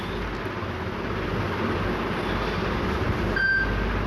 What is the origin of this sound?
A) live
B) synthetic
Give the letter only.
A